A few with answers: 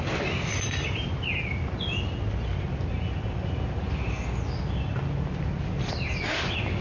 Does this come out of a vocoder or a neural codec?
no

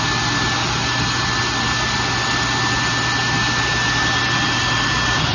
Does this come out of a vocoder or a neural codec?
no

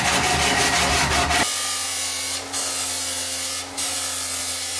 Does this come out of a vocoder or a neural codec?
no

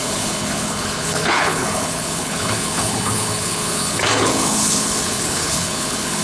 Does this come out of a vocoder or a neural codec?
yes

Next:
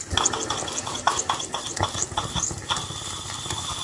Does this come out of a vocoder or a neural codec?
no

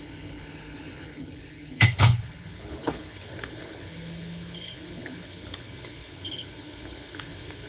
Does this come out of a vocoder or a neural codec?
yes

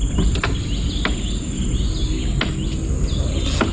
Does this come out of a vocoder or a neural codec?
no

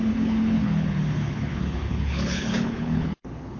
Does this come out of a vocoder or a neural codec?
yes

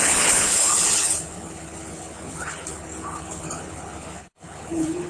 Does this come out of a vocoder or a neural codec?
yes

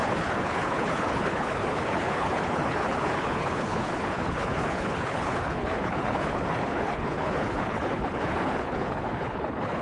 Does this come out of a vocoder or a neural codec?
yes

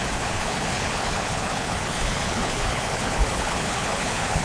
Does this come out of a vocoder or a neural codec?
yes